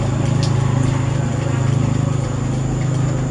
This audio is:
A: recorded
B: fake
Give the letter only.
A